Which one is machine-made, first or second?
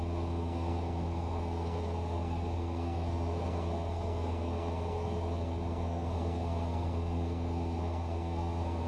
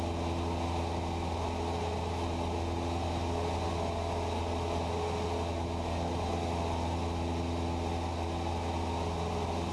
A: first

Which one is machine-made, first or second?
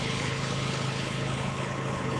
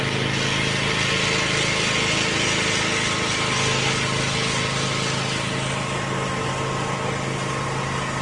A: first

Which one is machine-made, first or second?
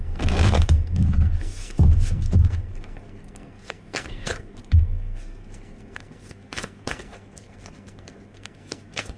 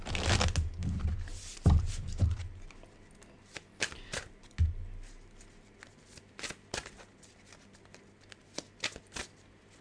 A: first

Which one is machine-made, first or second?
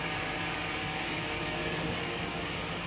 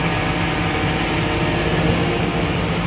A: first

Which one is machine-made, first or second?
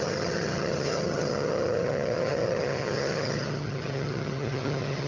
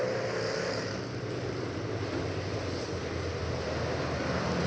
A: first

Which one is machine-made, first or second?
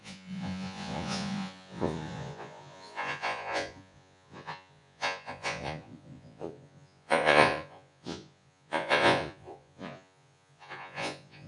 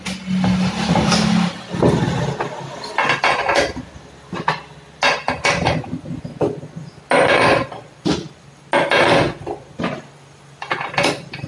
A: first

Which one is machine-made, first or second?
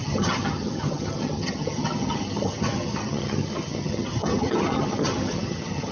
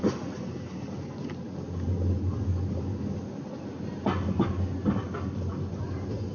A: first